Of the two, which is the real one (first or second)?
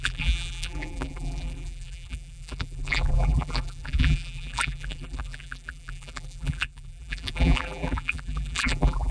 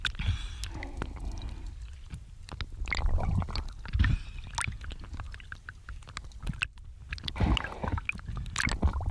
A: second